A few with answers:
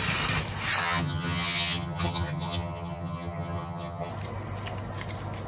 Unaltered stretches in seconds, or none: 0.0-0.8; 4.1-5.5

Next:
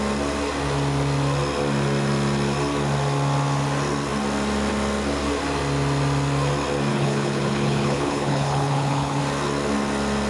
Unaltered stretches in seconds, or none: 0.0-6.9; 9.2-10.3